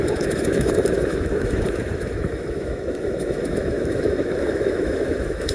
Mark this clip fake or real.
fake